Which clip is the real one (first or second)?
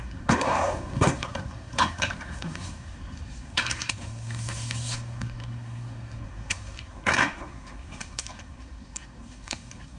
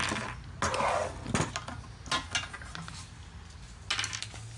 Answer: second